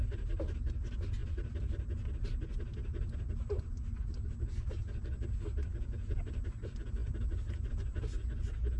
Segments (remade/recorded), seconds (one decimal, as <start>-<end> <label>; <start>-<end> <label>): 0.0-5.7 recorded; 5.7-6.2 remade; 6.2-8.8 recorded